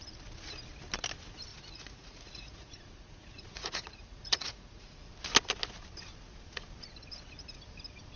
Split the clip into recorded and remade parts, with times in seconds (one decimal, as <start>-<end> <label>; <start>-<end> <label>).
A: 0.0-1.5 recorded; 1.5-5.1 remade; 5.1-8.2 recorded